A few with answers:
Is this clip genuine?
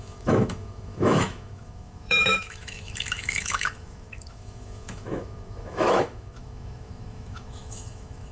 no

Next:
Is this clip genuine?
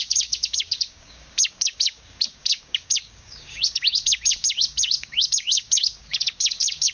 no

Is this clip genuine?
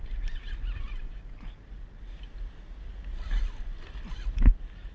yes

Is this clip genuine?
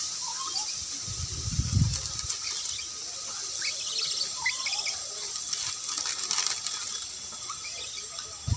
yes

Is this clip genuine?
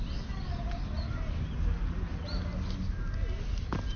yes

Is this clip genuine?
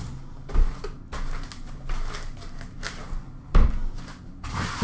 yes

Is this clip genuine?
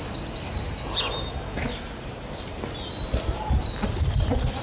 yes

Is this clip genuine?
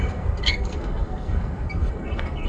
no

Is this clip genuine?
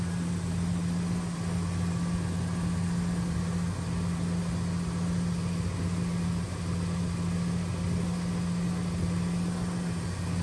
yes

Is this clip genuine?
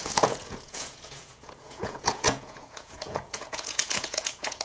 no